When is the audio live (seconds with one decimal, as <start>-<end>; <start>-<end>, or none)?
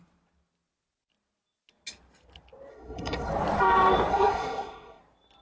0.0-2.7; 3.3-4.1; 5.0-5.4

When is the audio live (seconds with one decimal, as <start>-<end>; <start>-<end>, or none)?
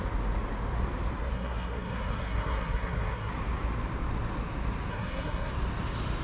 0.0-1.2; 3.3-4.9; 5.5-6.2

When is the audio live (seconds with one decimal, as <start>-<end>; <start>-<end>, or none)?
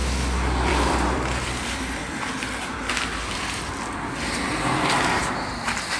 5.2-6.0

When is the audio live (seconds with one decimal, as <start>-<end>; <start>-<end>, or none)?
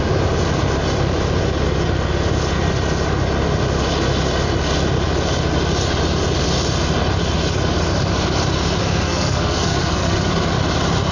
0.0-8.8; 10.3-11.1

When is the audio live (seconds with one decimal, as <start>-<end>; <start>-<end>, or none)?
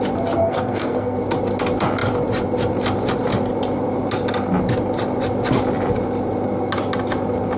0.0-0.4; 1.2-7.6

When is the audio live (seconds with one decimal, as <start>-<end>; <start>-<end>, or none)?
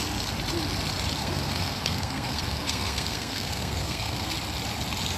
0.0-1.2; 4.3-5.2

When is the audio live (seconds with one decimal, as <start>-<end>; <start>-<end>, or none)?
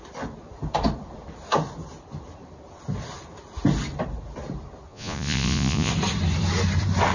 0.0-4.9; 5.9-7.1